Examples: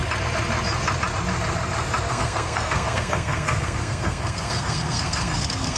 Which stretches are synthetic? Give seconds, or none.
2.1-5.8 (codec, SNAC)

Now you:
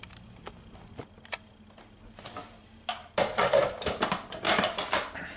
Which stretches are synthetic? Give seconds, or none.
none

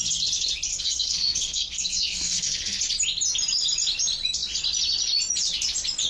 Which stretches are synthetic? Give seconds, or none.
0.7-2.8 (codec, SNAC)

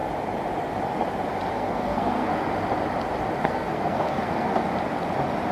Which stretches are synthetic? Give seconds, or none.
1.5-2.3 (codec, SNAC); 3.4-4.7

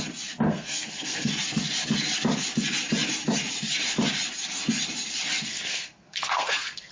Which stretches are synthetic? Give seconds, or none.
0.5-1.3 (codec, SNAC); 5.5-6.9

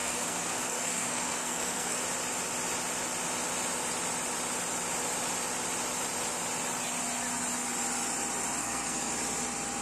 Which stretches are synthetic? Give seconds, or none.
0.0-2.0 (codec, SNAC); 8.6-9.1

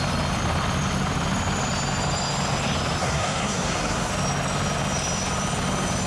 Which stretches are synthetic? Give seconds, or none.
3.0-4.1 (codec, SNAC)

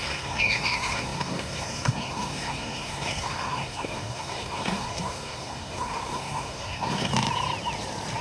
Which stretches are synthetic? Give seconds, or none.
0.0-7.1 (codec, SNAC)